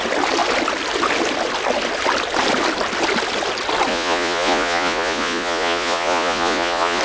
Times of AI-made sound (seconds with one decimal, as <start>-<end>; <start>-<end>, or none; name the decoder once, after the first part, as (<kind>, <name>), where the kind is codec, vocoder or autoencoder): 3.9-7.0 (vocoder, Vocos)